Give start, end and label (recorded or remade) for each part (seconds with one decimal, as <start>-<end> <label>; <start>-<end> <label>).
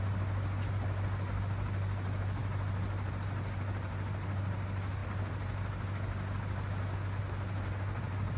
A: 0.0-8.4 recorded